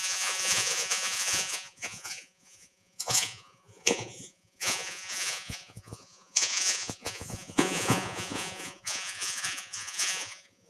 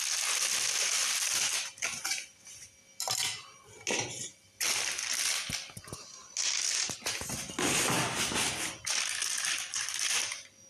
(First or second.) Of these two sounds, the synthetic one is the first